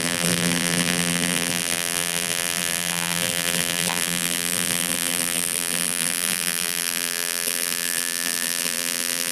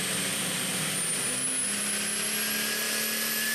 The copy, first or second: first